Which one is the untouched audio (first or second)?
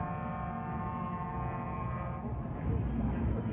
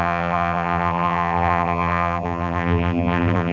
first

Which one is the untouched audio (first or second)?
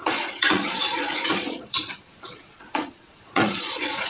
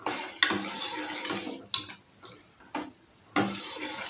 second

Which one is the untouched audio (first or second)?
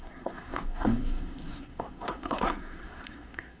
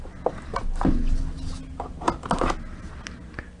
second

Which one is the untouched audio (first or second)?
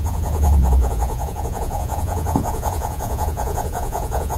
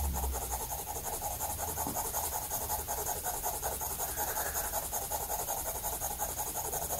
second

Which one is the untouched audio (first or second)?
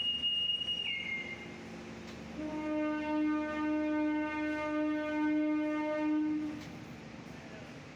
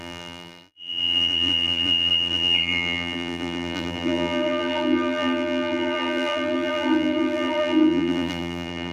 first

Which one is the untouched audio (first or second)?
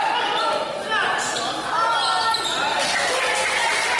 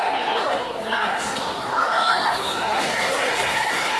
first